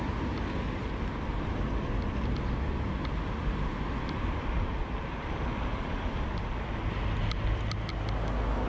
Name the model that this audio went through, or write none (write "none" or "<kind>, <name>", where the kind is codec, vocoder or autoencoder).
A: none